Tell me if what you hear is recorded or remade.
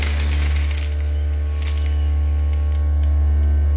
recorded